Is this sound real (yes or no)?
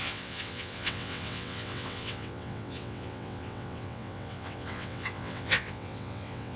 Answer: no